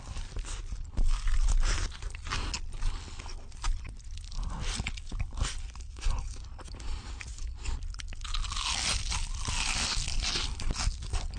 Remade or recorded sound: recorded